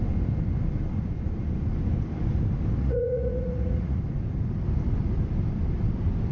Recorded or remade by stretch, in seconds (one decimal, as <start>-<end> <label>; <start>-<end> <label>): 0.0-2.8 recorded; 2.8-4.0 remade; 4.0-6.3 recorded